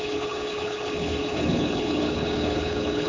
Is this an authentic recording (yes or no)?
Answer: no